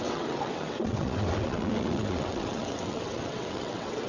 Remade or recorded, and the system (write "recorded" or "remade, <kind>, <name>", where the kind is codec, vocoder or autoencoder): remade, vocoder, WaveNeXt